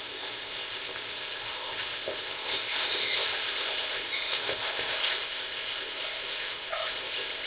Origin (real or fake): fake